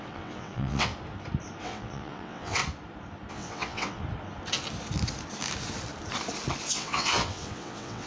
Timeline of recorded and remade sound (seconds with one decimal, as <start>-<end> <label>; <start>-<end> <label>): 0.0-0.9 remade; 0.9-1.6 recorded; 1.6-2.6 remade; 2.6-3.3 recorded; 3.3-4.0 remade; 4.0-6.7 recorded; 6.7-8.1 remade